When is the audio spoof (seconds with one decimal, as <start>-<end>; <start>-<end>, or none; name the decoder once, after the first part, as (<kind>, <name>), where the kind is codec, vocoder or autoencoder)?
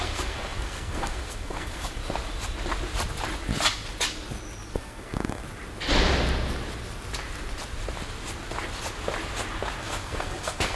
0.0-2.0 (codec, SNAC); 4.7-5.4; 9.8-10.8